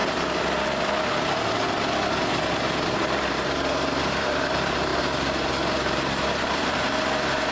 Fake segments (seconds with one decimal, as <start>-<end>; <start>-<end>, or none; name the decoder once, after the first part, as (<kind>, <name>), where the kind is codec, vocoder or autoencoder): 3.3-7.5 (vocoder, BigVGAN v2)